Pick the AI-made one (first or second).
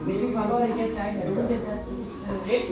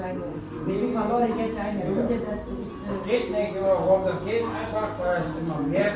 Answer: first